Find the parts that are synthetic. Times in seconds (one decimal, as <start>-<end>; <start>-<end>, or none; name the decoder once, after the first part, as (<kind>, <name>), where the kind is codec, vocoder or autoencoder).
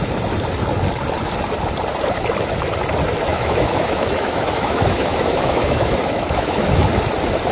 3.3-6.8 (autoencoder, DAC-VAE)